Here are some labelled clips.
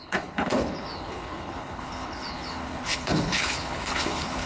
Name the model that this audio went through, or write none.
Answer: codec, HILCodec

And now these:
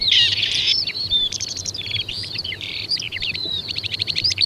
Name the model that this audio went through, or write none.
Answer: vocoder, BigVGAN v2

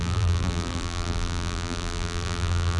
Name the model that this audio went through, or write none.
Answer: vocoder, BigVGAN v2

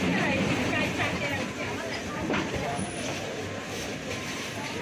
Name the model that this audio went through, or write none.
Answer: vocoder, BigVGAN v2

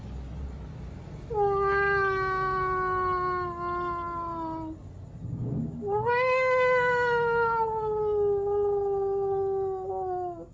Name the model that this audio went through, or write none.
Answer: none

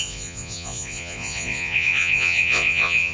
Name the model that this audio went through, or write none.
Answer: vocoder, Vocos